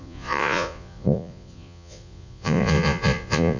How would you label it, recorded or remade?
remade